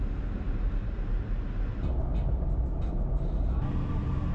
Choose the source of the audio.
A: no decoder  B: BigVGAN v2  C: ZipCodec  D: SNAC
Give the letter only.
A